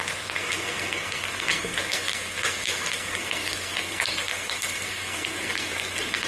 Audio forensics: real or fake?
fake